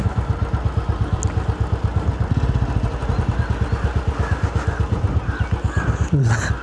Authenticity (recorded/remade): recorded